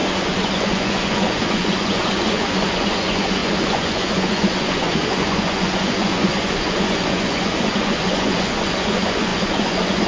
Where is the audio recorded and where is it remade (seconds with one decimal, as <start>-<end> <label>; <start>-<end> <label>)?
0.0-10.1 remade